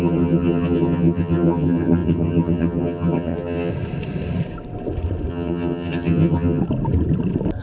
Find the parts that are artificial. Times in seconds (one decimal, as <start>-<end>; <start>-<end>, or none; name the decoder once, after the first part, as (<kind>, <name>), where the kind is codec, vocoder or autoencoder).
0.0-3.7 (vocoder, HiFi-GAN); 5.3-6.6